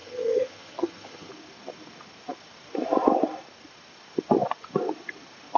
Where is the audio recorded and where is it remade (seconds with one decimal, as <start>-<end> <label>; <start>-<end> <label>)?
0.0-1.3 remade; 1.3-5.6 recorded